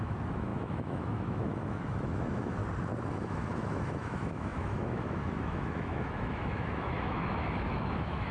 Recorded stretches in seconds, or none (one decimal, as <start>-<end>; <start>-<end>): 2.6-3.1